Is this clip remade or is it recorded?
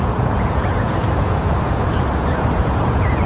remade